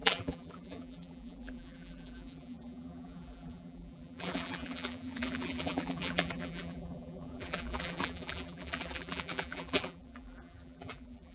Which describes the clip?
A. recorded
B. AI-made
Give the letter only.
B